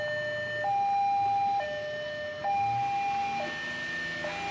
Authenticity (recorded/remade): recorded